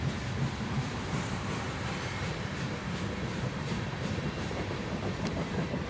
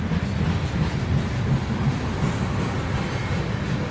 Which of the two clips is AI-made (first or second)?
first